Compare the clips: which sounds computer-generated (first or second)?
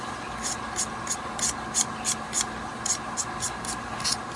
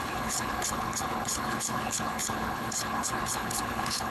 second